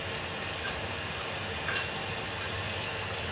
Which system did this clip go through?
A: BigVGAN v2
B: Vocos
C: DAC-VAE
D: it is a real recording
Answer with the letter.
D